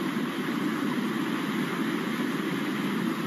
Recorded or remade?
recorded